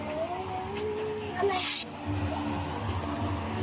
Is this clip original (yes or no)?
yes